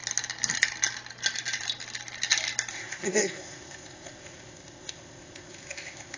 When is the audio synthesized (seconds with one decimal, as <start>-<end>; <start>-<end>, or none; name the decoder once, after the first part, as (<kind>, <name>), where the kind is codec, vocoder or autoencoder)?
2.7-6.2 (codec, ZipCodec)